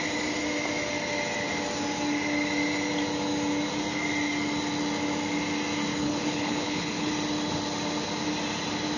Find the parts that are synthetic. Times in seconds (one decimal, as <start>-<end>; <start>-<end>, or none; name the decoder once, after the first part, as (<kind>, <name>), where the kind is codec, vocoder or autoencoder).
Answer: 5.9-7.1 (codec, HILCodec)